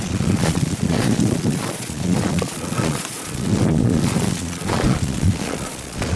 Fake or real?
fake